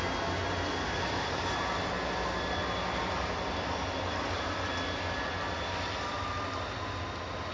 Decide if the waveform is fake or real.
real